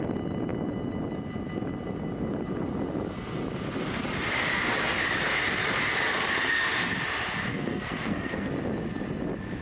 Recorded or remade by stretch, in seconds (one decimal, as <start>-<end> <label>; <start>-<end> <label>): 0.0-7.5 recorded; 7.5-8.5 remade; 8.5-9.6 recorded